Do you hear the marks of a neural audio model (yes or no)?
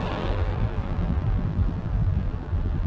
yes